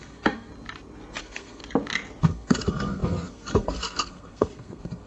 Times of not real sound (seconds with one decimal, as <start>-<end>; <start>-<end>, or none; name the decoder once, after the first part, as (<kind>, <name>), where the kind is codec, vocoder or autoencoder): 0.0-0.5 (codec, SNAC); 1.2-1.6; 2.2-5.1